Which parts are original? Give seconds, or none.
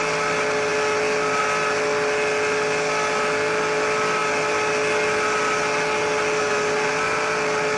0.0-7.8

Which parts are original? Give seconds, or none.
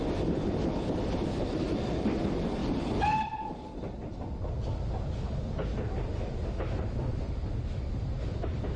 0.0-8.8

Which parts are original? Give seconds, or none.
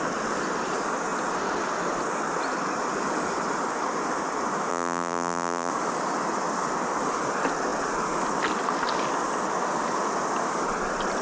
0.0-4.7; 5.7-11.2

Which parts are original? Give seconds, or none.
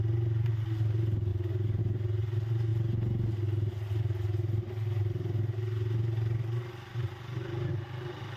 0.0-8.4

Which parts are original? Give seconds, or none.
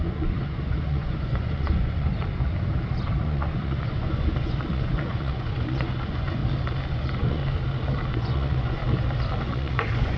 2.1-3.2; 6.4-6.9; 7.4-8.1; 8.8-9.4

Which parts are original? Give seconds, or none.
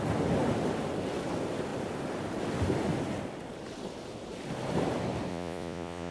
0.0-5.3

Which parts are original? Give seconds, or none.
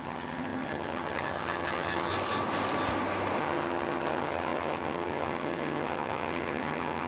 2.1-3.4